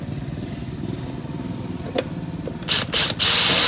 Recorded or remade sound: recorded